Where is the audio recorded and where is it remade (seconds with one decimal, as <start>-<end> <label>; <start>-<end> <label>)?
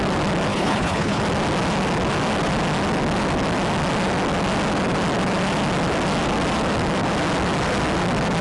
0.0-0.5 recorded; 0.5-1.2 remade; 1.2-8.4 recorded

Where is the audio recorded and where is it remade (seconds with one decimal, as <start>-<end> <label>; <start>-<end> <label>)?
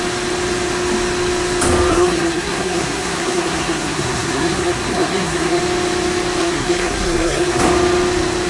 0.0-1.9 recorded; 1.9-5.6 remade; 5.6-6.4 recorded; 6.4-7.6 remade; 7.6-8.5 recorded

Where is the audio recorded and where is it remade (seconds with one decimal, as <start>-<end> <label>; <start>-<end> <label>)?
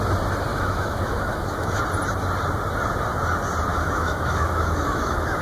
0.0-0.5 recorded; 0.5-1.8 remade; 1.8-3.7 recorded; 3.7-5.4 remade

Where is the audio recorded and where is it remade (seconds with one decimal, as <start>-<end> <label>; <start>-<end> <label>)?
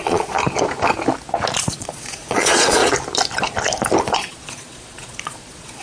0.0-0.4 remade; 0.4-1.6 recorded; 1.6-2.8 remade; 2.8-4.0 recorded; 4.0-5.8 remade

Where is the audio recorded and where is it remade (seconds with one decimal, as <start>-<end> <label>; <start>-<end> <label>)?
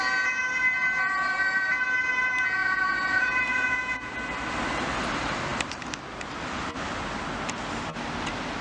0.0-2.6 recorded; 2.6-4.1 remade; 4.1-8.6 recorded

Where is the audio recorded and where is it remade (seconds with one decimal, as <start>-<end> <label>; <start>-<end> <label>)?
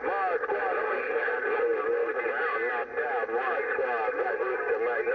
0.0-5.1 recorded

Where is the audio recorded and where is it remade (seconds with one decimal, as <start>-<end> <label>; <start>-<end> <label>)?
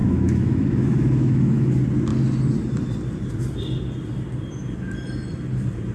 0.0-1.7 remade; 1.7-5.9 recorded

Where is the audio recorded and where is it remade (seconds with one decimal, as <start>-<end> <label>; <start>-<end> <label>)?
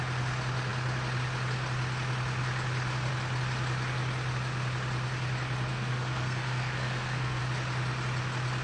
0.0-5.7 recorded; 5.7-7.4 remade; 7.4-8.6 recorded